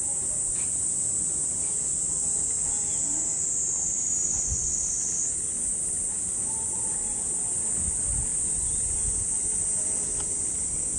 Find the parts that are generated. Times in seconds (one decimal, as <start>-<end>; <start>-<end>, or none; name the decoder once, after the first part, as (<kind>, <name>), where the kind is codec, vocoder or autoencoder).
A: none